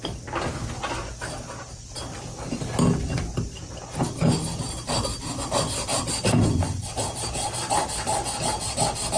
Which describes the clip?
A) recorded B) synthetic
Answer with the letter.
A